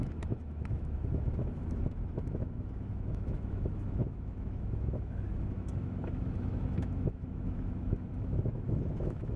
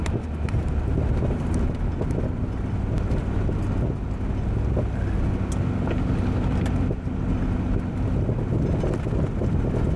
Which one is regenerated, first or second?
first